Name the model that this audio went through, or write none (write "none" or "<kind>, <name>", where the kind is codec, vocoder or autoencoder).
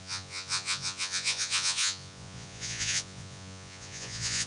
vocoder, Vocos